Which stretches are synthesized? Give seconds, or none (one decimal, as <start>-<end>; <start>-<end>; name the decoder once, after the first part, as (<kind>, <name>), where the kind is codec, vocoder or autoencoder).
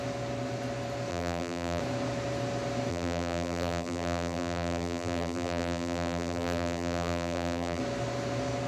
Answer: 1.1-1.8 (vocoder, BigVGAN v2); 2.9-7.8